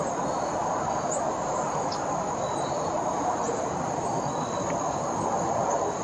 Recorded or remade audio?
recorded